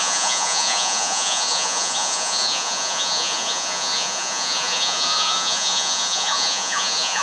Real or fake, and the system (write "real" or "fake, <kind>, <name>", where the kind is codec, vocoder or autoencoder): fake, vocoder, Vocos